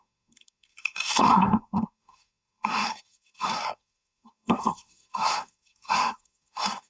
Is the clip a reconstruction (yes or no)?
yes